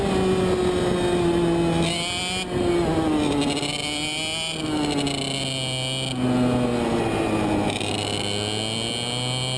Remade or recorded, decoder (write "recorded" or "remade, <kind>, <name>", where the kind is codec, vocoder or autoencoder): recorded